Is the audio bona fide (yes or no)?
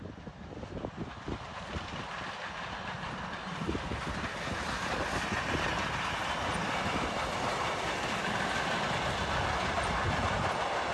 yes